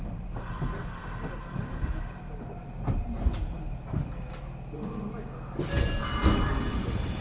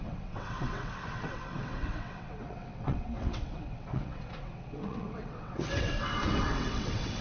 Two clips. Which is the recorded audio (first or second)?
first